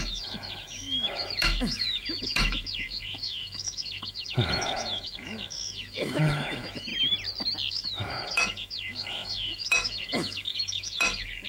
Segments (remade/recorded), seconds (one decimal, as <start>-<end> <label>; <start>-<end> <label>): 0.0-6.9 remade; 6.9-7.7 recorded; 7.7-11.5 remade